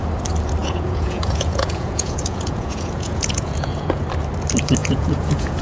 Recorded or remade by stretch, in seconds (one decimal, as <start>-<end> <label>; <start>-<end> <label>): 0.0-0.6 recorded; 0.6-4.0 remade; 4.0-4.8 recorded; 4.8-5.6 remade